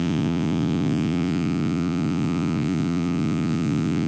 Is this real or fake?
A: fake